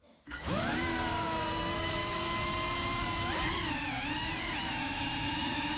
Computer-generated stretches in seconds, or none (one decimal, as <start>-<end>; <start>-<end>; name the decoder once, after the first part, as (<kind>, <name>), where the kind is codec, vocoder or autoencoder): 0.0-0.9 (autoencoder, DAC-VAE); 1.6-2.0; 4.8-5.8